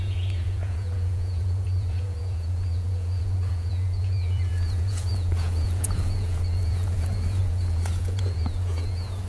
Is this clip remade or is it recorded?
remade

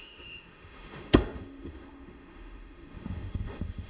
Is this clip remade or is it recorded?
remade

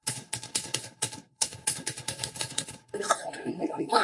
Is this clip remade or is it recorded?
remade